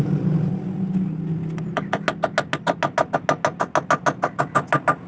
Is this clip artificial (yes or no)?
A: no